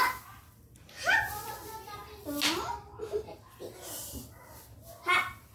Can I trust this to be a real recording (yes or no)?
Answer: yes